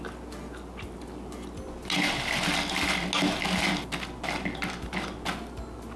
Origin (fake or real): real